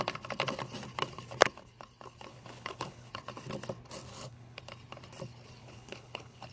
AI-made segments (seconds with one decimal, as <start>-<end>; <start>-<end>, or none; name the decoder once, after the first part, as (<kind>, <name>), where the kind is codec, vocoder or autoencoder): 2.3-3.1 (codec, HILCodec); 4.1-4.6; 5.6-6.5